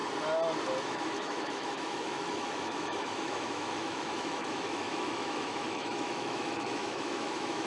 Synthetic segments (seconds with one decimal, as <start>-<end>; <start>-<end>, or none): 0.8-7.7